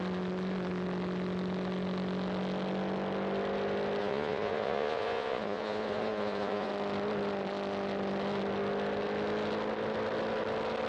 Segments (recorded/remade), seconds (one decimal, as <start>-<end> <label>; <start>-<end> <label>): 0.0-4.0 recorded; 4.0-6.7 remade; 6.7-10.9 recorded